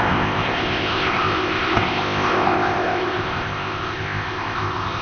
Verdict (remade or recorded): remade